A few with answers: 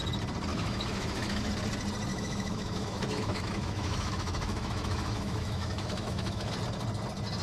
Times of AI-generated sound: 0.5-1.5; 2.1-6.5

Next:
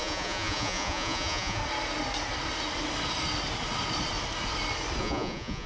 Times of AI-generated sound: 0.0-1.6; 5.0-5.7

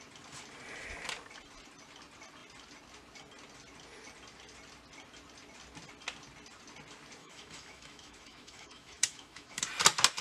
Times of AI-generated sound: 7.2-9.6

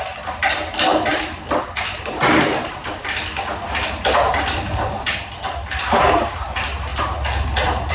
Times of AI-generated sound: none

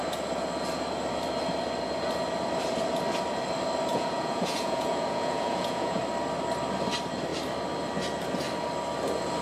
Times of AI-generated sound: 3.9-6.0